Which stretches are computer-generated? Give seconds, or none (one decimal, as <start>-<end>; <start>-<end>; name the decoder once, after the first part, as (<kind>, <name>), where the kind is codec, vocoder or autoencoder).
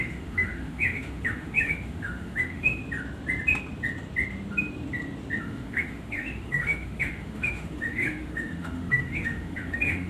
0.0-2.8 (autoencoder, DAC-VAE); 5.4-10.1